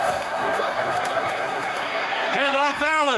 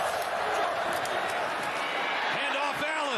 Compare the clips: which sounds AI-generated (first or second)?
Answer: first